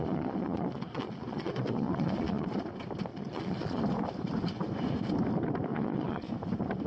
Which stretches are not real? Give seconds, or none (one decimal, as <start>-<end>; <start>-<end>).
0.0-2.6; 3.1-3.8; 5.7-6.3